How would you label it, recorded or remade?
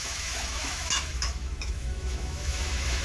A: remade